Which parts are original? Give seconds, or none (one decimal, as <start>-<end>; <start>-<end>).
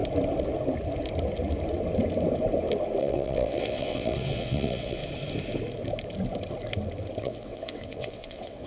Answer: 0.0-3.0; 5.0-7.2